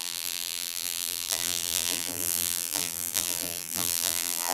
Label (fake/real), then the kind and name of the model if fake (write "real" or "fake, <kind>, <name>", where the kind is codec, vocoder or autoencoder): fake, vocoder, BigVGAN v2